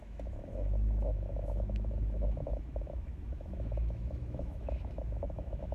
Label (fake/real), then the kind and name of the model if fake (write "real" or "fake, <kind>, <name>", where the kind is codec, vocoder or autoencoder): fake, autoencoder, DAC-VAE